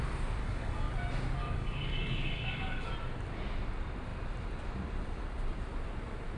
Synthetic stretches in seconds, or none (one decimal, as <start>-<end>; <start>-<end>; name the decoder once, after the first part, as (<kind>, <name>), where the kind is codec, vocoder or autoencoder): 0.4-0.9 (codec, DAC); 1.4-2.9